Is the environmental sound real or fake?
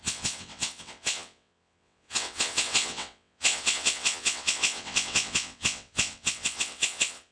fake